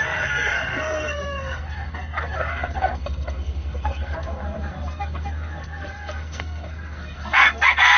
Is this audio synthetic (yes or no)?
yes